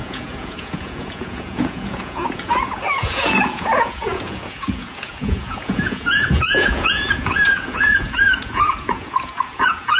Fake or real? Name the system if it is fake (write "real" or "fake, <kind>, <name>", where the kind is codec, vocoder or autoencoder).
fake, vocoder, Vocos